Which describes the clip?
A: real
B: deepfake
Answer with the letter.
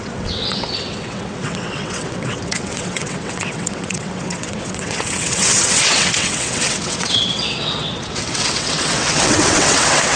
B